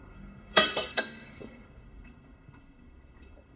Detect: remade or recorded remade